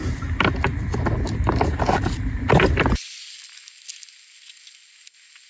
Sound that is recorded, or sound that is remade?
recorded